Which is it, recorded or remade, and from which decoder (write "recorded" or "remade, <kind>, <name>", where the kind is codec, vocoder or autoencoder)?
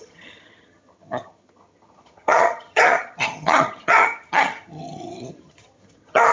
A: remade, vocoder, HiFi-GAN